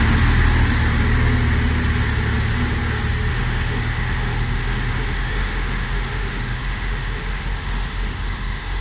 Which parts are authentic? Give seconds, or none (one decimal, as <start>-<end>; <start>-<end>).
0.0-3.3